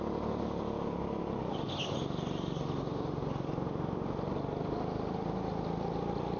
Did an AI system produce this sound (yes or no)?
no